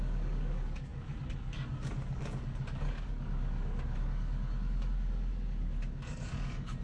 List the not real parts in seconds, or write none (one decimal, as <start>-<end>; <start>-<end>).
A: 0.0-6.8